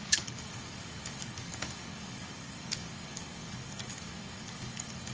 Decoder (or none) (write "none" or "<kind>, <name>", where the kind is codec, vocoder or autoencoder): codec, DAC